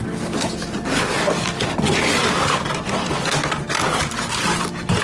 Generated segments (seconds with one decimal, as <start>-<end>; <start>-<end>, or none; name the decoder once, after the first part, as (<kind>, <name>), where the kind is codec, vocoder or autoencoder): none